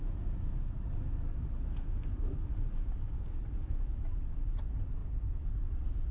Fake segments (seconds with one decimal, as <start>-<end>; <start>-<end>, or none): 0.0-5.0